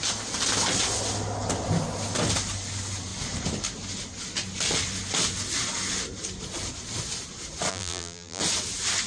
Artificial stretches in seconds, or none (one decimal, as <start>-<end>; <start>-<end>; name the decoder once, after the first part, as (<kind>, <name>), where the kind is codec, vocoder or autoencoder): 7.7-8.4 (vocoder, BigVGAN v2)